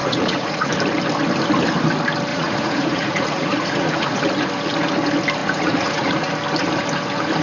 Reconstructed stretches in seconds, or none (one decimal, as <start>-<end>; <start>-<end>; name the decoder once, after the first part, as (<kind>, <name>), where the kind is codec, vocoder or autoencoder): 0.0-0.7 (vocoder, Vocos); 2.3-4.2; 5.4-6.3